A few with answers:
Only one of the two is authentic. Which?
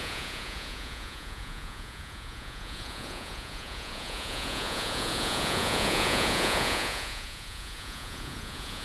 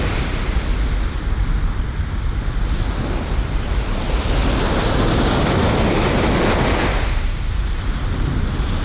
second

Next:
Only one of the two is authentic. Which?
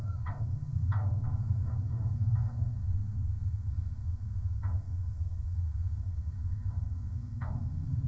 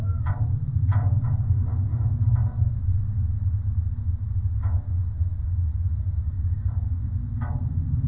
second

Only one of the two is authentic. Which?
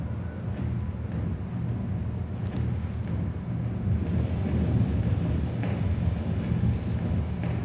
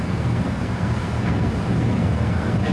first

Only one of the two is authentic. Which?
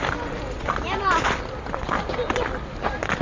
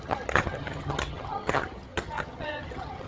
first